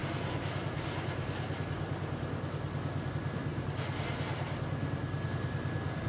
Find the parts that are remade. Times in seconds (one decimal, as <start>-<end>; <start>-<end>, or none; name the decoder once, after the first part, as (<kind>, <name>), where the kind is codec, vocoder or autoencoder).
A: 3.1-3.5 (vocoder, BigVGAN v2); 5.3-6.1